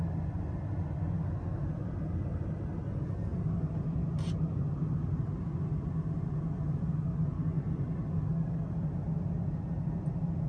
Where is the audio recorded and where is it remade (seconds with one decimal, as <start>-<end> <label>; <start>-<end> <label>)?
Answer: 0.0-10.5 recorded